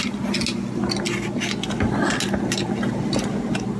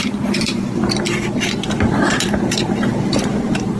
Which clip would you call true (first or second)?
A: first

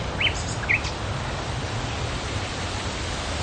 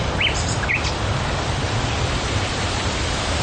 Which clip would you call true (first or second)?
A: first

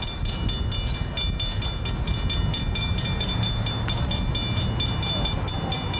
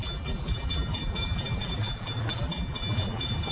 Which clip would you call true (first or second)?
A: first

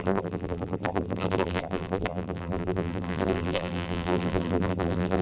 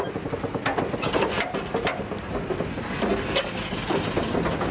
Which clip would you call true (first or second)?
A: second